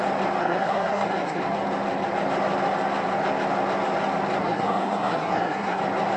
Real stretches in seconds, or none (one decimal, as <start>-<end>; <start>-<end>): 0.0-0.4; 1.4-4.4; 5.8-6.2